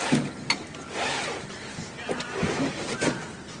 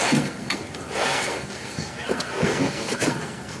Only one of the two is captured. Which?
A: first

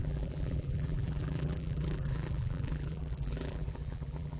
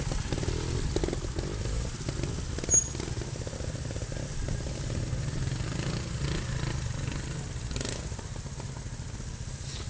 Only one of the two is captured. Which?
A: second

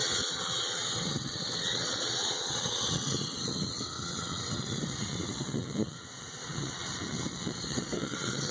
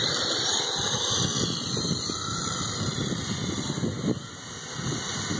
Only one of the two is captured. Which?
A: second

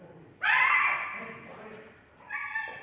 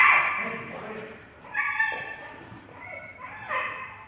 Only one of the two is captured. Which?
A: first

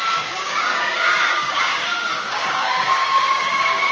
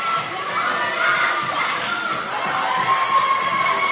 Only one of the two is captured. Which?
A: second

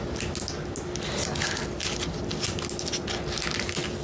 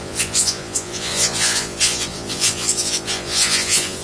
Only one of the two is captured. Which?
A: first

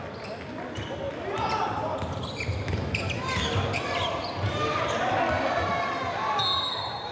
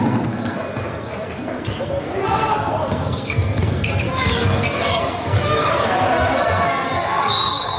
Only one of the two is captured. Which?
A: first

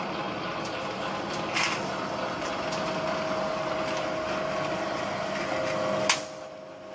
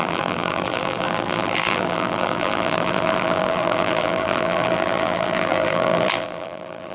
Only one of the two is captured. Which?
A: first